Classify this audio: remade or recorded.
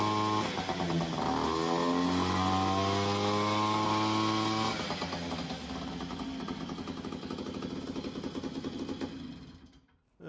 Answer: recorded